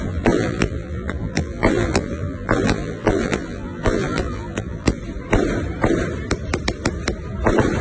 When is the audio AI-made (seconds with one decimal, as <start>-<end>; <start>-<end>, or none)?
0.0-5.0

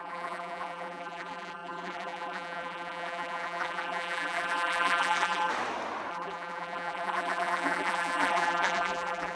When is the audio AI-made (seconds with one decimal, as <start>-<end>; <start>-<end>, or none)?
0.0-5.5; 6.1-9.4

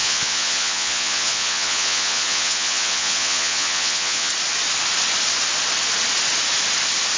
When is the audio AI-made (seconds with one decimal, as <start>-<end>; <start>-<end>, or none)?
0.0-4.3